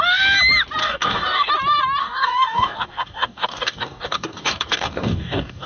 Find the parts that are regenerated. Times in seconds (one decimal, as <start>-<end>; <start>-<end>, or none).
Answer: 0.8-1.5; 2.0-5.7